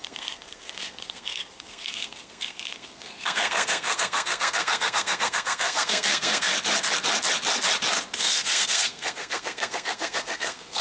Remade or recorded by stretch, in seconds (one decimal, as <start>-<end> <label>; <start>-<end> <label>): 0.0-6.5 remade; 6.5-8.2 recorded; 8.2-10.8 remade